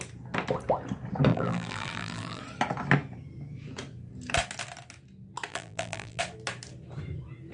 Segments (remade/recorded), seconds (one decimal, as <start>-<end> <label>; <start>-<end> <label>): 0.0-1.3 recorded; 1.3-2.4 remade; 2.4-5.5 recorded; 5.5-6.2 remade; 6.2-7.5 recorded